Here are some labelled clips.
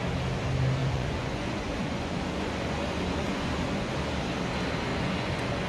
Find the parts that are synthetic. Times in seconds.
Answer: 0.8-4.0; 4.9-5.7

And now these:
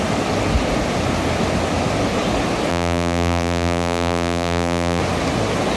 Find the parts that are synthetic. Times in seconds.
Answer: 2.7-5.0

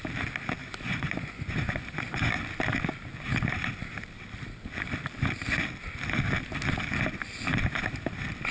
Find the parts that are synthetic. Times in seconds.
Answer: 0.6-2.3

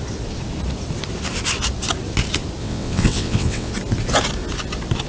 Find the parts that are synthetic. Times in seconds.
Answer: 2.6-3.7

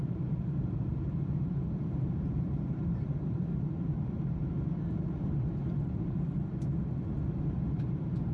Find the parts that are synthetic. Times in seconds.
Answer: 0.0-4.4; 7.8-8.3